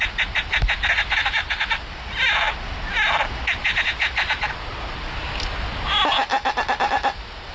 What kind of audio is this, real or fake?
real